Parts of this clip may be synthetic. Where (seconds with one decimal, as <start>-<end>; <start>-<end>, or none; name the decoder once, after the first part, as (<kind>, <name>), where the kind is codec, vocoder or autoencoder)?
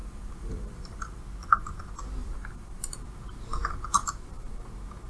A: 0.0-1.2 (vocoder, BigVGAN v2); 2.2-2.9; 4.0-4.6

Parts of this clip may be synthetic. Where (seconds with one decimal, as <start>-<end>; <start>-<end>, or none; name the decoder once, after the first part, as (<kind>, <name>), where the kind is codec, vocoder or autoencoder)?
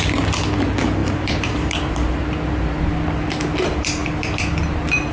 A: 1.0-2.9 (vocoder, BigVGAN v2)